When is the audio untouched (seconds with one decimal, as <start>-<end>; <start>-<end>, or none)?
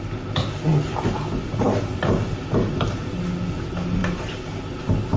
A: 0.0-0.7; 2.8-4.0; 4.8-5.2